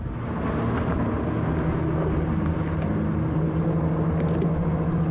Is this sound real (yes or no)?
yes